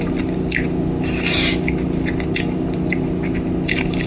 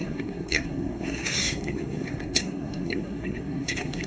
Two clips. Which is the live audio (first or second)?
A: first